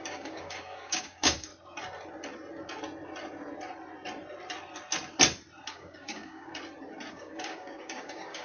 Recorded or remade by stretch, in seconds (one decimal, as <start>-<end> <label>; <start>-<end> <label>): 0.0-1.5 remade; 1.5-5.7 recorded; 5.7-6.5 remade; 6.5-7.1 recorded; 7.1-8.4 remade